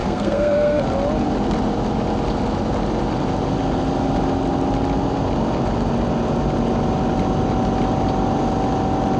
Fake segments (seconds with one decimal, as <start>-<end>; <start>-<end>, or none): 0.0-0.8